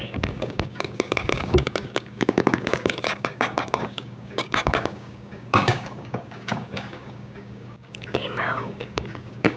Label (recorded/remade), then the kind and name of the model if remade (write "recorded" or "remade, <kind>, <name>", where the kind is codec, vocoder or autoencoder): remade, codec, DAC